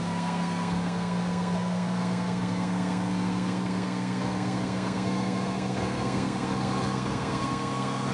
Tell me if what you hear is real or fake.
fake